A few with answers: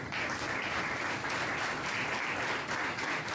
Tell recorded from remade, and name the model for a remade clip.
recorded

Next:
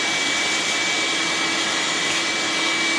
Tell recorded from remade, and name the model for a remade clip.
recorded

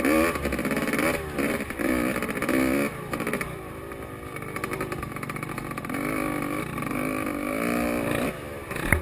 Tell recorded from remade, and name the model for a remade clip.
recorded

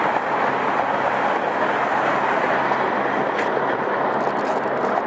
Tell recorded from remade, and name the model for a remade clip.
recorded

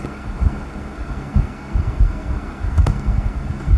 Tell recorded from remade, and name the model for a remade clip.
remade, codec, SNAC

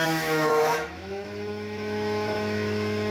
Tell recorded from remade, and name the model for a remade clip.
remade, autoencoder, DAC-VAE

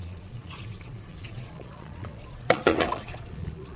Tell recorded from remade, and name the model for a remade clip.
remade, vocoder, Vocos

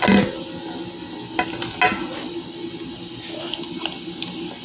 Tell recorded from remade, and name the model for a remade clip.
recorded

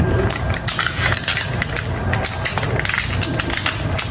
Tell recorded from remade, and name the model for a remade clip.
recorded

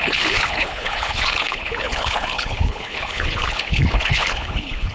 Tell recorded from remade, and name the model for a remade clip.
remade, codec, HILCodec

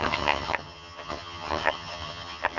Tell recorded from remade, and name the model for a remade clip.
remade, vocoder, HiFi-GAN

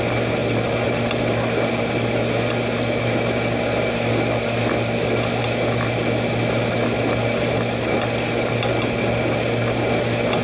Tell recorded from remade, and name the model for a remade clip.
recorded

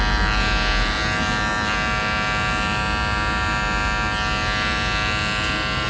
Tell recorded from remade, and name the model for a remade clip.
recorded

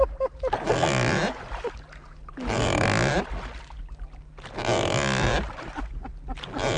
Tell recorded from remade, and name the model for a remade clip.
recorded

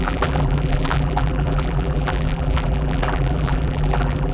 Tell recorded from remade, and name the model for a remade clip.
remade, vocoder, BigVGAN v2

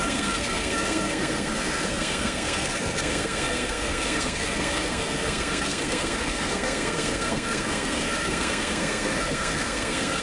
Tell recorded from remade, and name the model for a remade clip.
remade, codec, SNAC